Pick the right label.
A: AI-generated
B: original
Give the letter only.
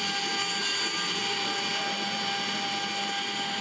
B